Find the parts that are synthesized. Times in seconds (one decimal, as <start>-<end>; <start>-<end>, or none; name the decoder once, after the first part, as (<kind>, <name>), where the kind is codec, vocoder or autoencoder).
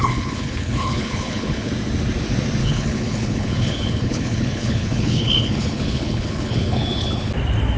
0.0-1.7 (codec, HILCodec); 2.6-7.3